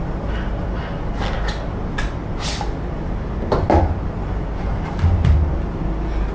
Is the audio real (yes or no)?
yes